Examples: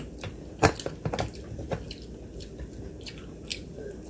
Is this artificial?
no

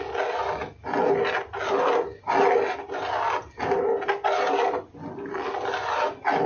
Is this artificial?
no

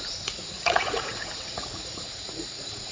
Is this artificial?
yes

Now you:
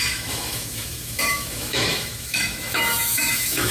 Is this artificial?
yes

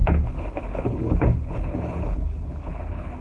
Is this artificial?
yes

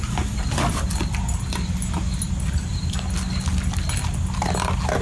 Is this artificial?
no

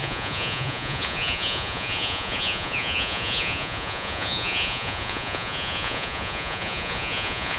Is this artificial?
yes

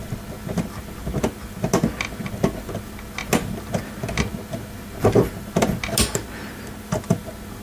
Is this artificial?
no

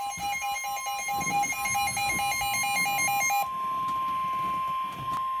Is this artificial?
no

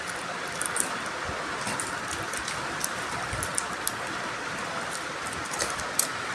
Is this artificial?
no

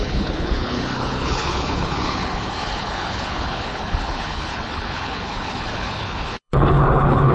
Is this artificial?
yes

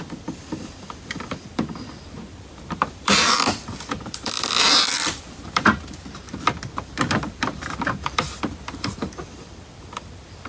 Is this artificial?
yes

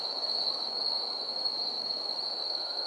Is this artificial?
yes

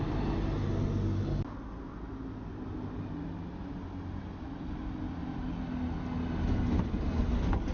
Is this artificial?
no